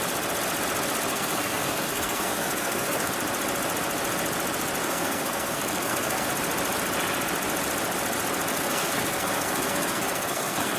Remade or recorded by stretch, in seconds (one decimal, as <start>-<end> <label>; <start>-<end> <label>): 0.0-1.1 recorded; 1.1-3.1 remade; 3.1-4.8 recorded; 4.8-6.3 remade; 6.3-8.5 recorded; 8.5-10.8 remade